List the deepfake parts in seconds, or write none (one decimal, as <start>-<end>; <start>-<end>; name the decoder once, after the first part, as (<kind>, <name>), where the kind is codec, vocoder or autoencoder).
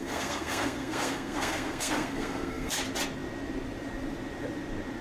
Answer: 0.0-2.8 (codec, SNAC)